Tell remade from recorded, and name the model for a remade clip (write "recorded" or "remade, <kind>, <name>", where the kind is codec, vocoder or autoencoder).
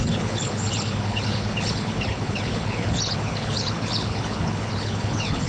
remade, codec, HILCodec